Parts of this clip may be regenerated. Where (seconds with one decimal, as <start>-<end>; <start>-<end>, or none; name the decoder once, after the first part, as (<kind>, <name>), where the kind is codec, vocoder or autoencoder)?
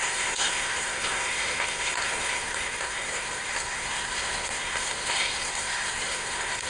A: 0.0-6.7 (codec, SNAC)